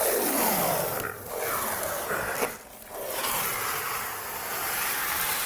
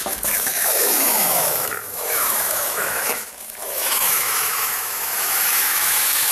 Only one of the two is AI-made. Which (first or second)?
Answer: second